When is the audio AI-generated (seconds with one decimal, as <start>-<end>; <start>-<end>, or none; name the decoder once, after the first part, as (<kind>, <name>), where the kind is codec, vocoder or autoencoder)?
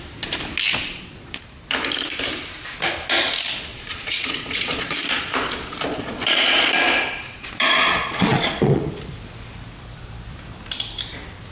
0.8-1.4 (vocoder, Vocos); 3.7-8.8